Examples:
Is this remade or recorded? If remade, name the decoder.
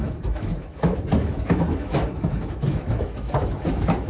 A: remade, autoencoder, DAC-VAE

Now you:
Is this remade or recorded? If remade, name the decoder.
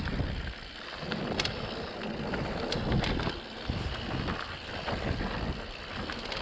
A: recorded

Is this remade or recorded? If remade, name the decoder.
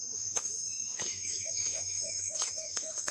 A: remade, autoencoder, DAC-VAE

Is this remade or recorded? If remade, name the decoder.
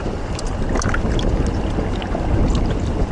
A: recorded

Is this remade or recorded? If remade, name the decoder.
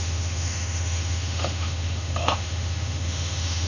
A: remade, autoencoder, DAC-VAE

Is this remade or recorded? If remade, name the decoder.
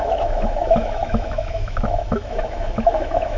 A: remade, autoencoder, DAC-VAE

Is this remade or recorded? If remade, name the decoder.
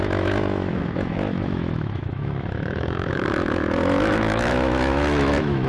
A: remade, autoencoder, DAC-VAE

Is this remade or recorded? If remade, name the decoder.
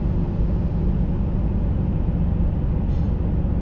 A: recorded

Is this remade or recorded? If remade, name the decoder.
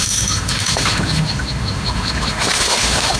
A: remade, autoencoder, DAC-VAE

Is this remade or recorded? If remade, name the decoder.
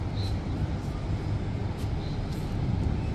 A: recorded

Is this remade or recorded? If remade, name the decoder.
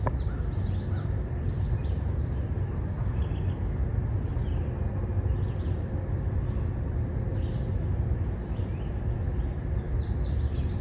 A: recorded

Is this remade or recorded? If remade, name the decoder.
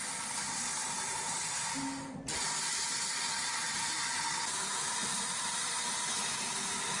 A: recorded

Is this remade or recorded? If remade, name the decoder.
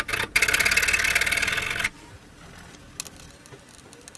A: recorded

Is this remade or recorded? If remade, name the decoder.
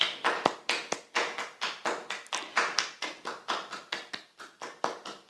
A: recorded